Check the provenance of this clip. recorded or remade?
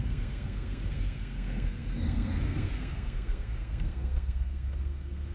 remade